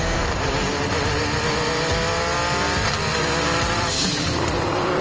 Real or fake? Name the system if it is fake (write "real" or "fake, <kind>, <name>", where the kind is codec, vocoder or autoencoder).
real